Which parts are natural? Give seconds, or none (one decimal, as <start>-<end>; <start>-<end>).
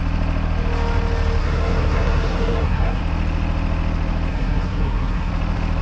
0.0-1.4; 3.0-4.3; 5.3-5.8